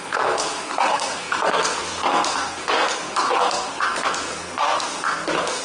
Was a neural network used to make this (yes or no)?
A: yes